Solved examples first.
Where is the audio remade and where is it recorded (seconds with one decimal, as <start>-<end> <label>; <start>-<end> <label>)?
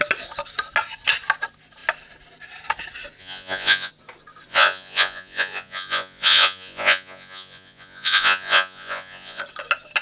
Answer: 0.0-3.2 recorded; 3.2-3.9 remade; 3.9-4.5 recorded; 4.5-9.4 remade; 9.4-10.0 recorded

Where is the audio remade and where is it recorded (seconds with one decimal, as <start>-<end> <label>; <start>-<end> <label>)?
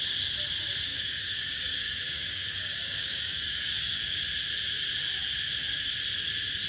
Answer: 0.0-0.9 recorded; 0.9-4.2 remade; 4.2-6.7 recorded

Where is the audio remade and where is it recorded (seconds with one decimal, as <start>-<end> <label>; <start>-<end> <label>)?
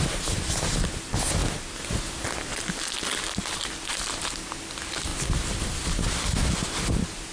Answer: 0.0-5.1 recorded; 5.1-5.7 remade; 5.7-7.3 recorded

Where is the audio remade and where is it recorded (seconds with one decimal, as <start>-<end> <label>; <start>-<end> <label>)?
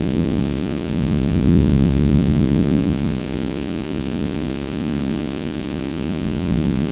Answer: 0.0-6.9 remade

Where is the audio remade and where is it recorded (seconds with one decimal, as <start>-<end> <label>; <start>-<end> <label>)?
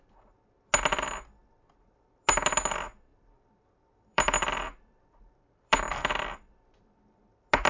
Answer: 0.0-3.1 recorded; 3.1-7.2 remade; 7.2-7.7 recorded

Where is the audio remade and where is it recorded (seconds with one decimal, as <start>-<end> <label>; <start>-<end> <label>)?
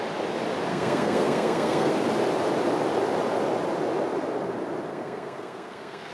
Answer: 0.0-0.7 recorded; 0.7-1.9 remade; 1.9-4.9 recorded; 4.9-6.1 remade